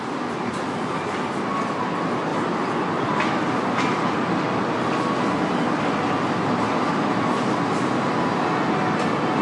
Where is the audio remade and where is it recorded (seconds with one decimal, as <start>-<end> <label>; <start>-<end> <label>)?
0.0-9.4 recorded